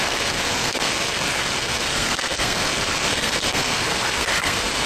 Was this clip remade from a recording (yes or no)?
yes